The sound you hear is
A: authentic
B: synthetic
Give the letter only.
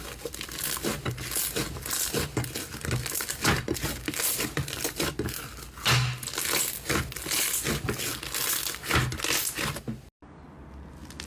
A